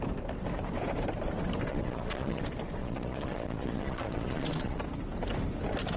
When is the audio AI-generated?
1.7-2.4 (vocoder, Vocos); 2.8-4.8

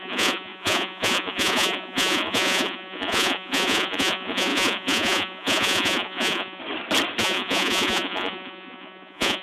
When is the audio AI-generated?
0.0-6.6 (vocoder, Vocos); 7.2-9.4

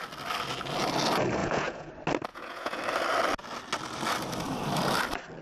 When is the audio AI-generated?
1.4-1.9 (vocoder, Vocos); 2.3-2.8

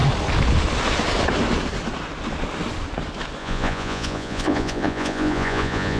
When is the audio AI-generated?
3.4-6.0 (vocoder, Vocos)

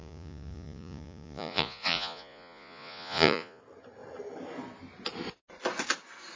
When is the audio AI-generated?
0.0-3.6 (vocoder, Vocos)

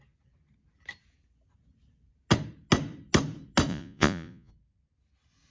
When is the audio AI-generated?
3.7-4.5 (vocoder, Vocos)